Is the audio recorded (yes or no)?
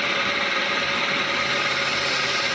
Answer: yes